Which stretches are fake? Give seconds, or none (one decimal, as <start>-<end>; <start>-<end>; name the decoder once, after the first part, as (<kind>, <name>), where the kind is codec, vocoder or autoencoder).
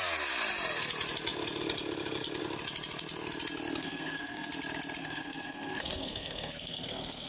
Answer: 3.8-4.5 (codec, SNAC); 5.0-7.3